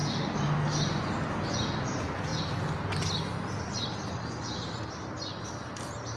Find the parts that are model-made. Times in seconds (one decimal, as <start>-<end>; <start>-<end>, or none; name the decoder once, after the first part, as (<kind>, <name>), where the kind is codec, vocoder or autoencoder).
none